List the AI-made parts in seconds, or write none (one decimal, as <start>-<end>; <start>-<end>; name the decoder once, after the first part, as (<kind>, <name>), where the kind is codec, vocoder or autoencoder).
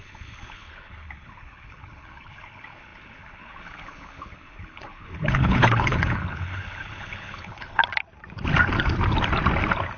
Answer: 0.0-7.8 (codec, HILCodec)